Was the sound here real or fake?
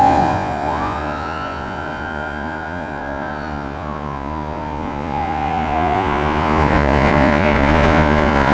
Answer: fake